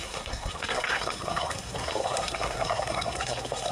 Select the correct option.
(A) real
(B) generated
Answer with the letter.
B